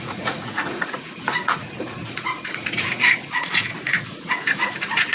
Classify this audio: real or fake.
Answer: fake